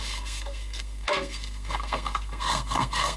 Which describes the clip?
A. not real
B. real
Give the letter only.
A